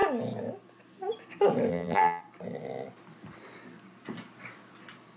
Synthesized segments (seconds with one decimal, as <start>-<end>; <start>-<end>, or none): 1.7-2.2

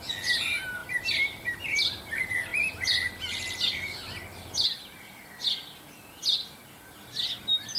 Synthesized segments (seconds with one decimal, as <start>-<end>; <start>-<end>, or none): 0.8-1.6

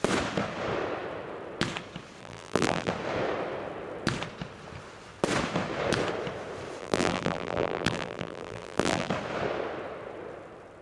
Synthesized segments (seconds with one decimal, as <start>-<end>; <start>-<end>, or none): 2.2-2.9; 6.8-9.1

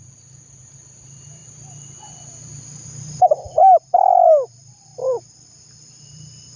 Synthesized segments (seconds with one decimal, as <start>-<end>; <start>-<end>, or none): 0.0-1.4; 4.5-4.9; 5.9-6.6

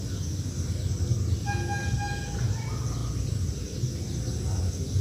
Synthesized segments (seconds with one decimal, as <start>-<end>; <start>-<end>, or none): 3.0-3.6

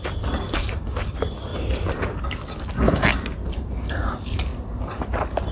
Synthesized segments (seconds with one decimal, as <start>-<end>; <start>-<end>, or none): 0.0-1.5; 3.9-5.5

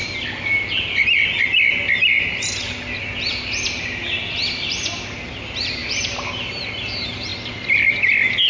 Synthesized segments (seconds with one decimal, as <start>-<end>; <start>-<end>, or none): 5.8-6.7

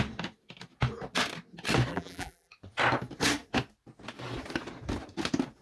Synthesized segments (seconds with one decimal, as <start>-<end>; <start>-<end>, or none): 1.9-2.5